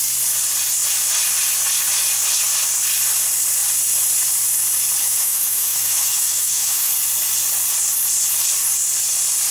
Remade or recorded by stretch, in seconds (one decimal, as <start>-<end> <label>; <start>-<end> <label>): 0.0-5.0 recorded; 5.0-6.9 remade; 6.9-9.5 recorded